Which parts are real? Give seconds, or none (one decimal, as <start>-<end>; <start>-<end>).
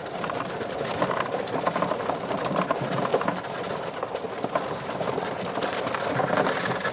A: 1.4-3.1; 4.1-6.9